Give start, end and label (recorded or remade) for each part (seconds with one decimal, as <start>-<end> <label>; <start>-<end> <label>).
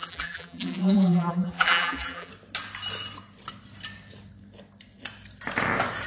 0.0-2.3 remade; 2.3-6.1 recorded